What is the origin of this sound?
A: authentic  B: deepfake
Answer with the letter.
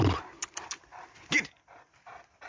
A